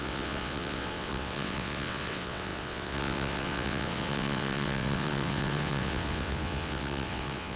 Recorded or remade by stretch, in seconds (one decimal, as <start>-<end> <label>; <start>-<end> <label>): 0.0-7.6 remade